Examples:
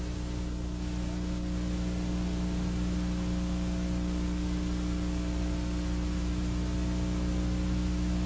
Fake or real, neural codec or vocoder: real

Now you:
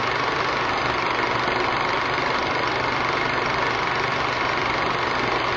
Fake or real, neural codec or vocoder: real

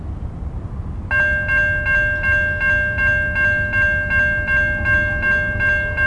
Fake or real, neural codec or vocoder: real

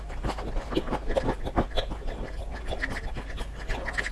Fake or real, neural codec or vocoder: real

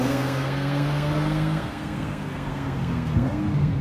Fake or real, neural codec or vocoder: fake, codec, SNAC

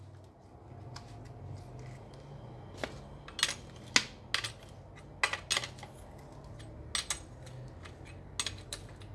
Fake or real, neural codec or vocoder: real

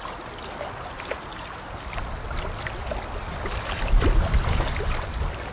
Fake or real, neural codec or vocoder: real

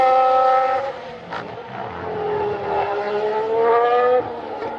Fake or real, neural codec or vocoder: real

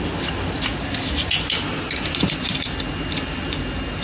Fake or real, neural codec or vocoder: real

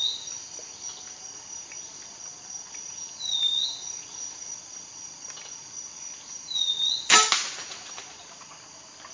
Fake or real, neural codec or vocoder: real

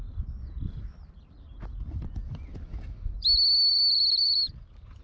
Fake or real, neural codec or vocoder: real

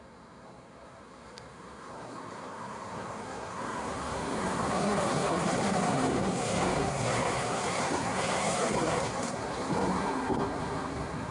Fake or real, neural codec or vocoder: fake, codec, SNAC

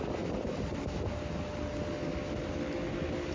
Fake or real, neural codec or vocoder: real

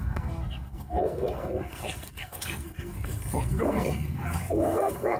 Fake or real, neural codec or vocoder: fake, codec, SNAC